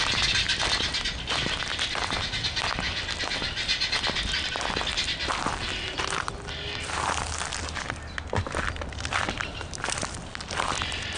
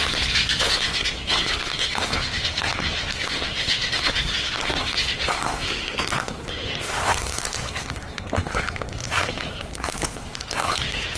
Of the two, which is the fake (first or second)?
second